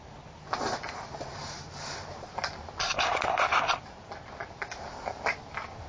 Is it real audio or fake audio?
fake